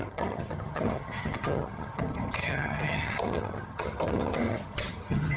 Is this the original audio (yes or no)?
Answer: no